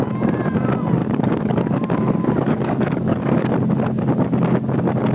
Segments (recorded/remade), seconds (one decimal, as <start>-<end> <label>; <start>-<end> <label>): 0.0-1.0 recorded; 1.0-3.5 remade; 3.5-5.1 recorded